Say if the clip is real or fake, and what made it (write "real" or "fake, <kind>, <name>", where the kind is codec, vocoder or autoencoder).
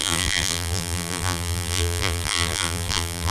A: fake, vocoder, BigVGAN v2